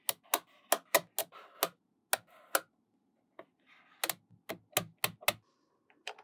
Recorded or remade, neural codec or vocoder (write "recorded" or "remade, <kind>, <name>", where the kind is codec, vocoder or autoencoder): recorded